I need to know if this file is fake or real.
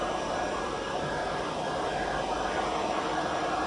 real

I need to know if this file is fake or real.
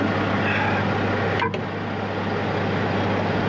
real